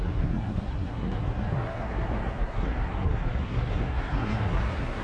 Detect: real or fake fake